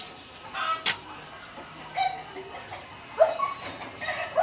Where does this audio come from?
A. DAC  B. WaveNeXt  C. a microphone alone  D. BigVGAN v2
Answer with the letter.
C